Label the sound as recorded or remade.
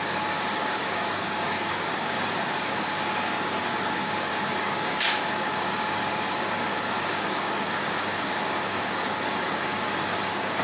remade